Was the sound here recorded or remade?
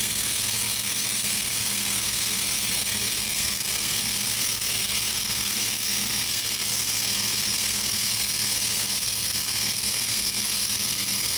remade